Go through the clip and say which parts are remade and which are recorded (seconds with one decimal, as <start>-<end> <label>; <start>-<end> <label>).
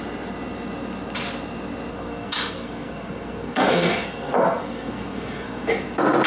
0.0-1.9 recorded; 1.9-5.7 remade; 5.7-6.3 recorded